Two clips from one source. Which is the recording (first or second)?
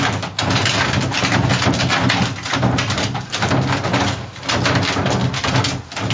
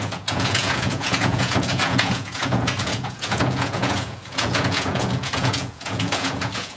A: first